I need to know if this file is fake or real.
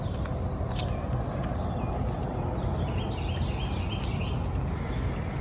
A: real